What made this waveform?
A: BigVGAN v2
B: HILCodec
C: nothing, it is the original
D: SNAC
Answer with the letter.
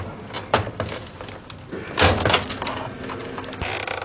C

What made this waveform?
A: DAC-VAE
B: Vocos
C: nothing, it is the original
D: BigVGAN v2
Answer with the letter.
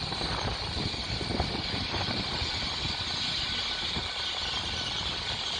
D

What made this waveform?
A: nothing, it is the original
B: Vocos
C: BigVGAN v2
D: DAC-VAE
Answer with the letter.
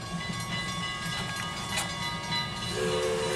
A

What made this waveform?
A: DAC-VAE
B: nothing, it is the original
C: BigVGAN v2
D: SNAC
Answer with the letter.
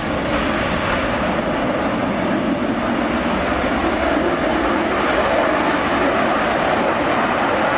B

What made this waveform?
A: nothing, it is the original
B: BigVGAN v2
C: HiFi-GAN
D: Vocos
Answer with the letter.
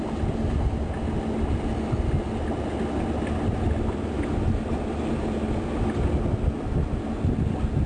A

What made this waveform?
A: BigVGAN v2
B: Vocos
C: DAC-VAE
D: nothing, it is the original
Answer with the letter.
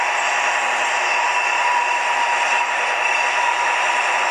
A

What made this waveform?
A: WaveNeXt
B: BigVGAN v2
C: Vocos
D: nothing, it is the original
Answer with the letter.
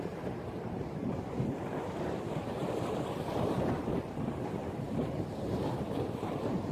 B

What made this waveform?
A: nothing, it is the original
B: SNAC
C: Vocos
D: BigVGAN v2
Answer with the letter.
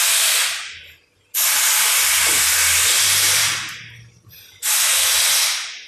A